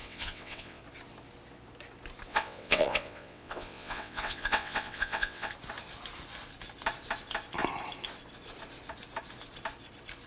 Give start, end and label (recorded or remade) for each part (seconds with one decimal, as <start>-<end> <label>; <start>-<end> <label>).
0.0-0.8 remade; 0.8-2.3 recorded; 2.3-5.5 remade; 5.5-10.3 recorded